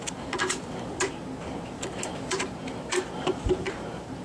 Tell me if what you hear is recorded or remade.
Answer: remade